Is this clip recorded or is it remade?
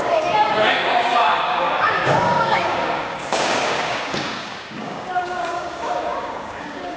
remade